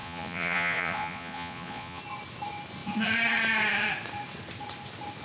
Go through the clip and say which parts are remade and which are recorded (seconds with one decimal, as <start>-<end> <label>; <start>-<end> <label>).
0.0-2.0 remade; 2.0-5.2 recorded